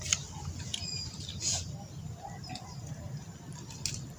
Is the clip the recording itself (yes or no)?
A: yes